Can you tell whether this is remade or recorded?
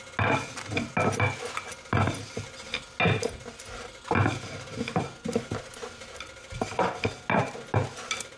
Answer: recorded